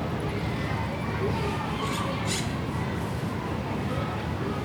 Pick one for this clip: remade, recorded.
recorded